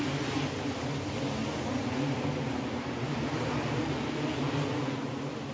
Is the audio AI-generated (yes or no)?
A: no